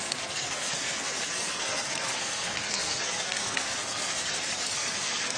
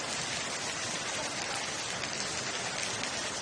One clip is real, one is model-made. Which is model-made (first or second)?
first